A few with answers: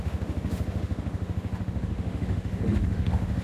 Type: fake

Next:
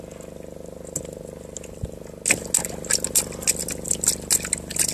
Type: real